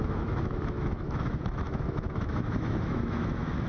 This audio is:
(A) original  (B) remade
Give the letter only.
B